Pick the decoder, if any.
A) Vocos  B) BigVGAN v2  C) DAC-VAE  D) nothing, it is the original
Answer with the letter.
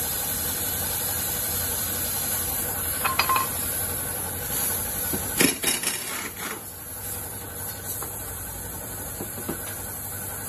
B